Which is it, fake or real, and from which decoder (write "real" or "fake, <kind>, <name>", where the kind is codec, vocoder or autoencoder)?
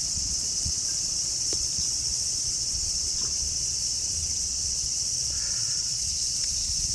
fake, vocoder, Vocos